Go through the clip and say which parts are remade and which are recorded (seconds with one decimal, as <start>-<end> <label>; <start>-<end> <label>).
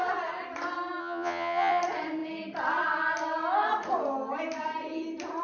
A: 0.0-1.0 recorded; 1.0-1.8 remade; 1.8-5.4 recorded